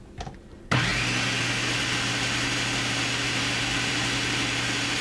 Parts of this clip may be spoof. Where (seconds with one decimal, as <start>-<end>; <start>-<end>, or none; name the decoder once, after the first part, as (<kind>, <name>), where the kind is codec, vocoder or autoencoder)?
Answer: none